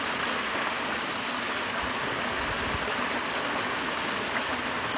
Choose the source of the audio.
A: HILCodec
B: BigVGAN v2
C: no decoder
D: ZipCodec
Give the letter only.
B